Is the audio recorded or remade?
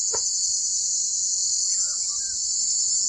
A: recorded